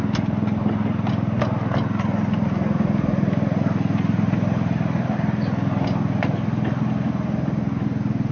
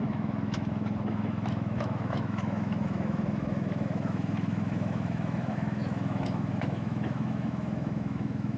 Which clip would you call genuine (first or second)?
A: first